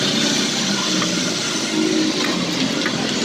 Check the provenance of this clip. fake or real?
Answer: real